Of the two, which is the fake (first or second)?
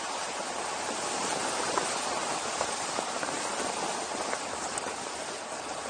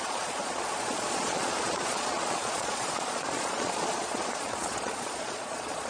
second